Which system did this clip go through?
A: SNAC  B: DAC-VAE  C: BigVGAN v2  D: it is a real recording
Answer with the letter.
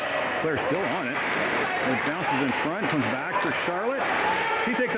D